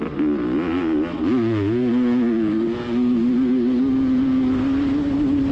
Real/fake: real